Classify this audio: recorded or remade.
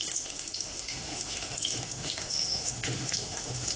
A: remade